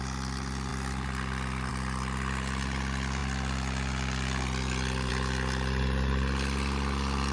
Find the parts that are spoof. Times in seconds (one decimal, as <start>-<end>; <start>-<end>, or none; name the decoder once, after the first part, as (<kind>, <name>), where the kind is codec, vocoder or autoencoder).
none